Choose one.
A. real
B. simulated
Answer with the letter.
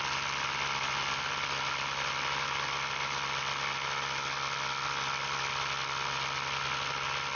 A